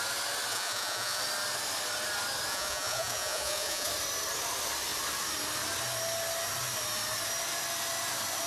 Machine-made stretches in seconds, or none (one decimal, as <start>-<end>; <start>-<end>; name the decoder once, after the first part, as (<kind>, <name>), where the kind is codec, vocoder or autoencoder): 0.5-1.2 (vocoder, Vocos); 2.5-3.9